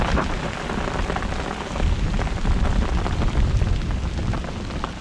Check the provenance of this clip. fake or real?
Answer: real